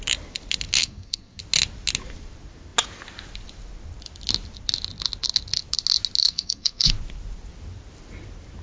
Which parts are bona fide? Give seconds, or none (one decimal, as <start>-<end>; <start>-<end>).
0.0-0.8; 1.4-6.2; 6.9-8.6